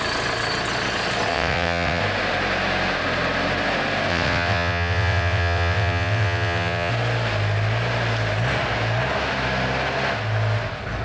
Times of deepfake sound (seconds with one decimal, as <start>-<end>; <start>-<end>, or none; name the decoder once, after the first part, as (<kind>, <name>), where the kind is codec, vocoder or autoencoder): 1.3-2.0 (vocoder, WaveNeXt); 4.1-6.9

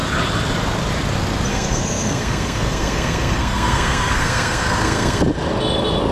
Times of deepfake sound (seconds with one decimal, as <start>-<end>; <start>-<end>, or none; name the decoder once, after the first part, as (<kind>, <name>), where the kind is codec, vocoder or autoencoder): 1.5-5.2 (codec, SNAC)

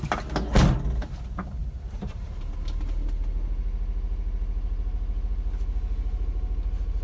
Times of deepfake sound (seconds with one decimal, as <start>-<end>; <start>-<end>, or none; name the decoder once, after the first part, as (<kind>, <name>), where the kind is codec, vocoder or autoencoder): none

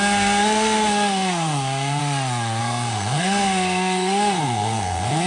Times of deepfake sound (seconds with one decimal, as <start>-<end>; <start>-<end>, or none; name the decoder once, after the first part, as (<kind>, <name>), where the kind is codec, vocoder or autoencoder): 0.0-2.0 (codec, SNAC); 2.6-5.3

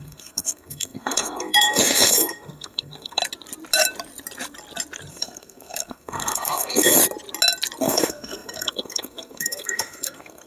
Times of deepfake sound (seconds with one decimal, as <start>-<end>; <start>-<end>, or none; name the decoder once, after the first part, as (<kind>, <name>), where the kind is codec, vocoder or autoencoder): 0.0-3.2 (codec, SNAC); 5.1-7.0; 7.8-10.5